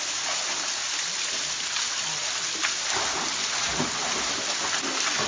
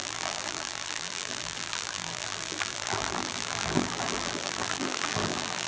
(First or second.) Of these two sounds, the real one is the first